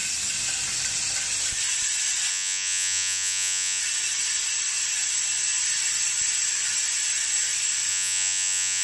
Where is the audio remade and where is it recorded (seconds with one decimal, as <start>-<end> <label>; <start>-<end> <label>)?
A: 0.0-2.3 recorded; 2.3-3.8 remade; 3.8-7.9 recorded; 7.9-8.8 remade